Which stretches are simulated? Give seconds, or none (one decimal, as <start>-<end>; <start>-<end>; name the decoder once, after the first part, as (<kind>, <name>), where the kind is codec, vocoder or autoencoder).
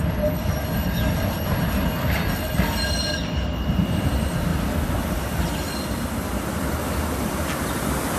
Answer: none